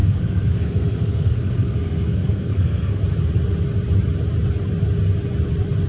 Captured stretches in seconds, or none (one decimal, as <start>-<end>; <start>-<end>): 3.0-5.9